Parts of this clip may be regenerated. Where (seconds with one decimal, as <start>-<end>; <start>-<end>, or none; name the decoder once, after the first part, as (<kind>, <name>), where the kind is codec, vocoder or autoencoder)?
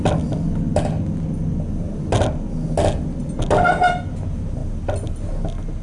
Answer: none